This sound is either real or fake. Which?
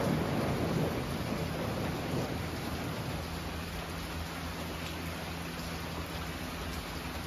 real